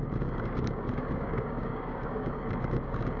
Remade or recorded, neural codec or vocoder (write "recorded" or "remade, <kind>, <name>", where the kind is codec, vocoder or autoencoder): remade, codec, DAC